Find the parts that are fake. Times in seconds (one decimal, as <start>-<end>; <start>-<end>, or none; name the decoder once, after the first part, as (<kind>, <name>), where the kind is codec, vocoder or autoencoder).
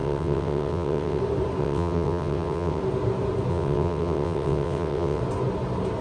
0.0-1.2 (vocoder, WaveNeXt); 1.6-2.8; 3.5-5.2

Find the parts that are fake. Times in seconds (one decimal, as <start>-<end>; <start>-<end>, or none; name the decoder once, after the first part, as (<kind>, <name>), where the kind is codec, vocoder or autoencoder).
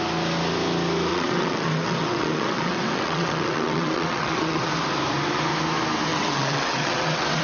1.1-4.7 (vocoder, WaveNeXt); 6.1-7.4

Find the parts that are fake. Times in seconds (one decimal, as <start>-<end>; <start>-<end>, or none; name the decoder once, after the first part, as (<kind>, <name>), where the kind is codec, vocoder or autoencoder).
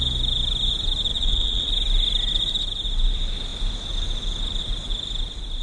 1.1-1.7 (vocoder, WaveNeXt)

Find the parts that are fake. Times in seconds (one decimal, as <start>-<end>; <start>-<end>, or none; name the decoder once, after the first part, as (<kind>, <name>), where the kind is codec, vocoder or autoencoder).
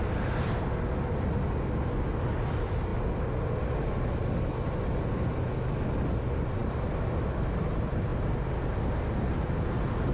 none